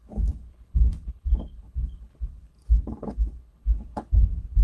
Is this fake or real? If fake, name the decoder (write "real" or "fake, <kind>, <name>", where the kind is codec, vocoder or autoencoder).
fake, codec, HILCodec